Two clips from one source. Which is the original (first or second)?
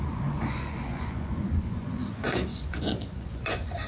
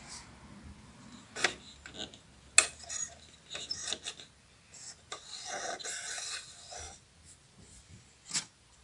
second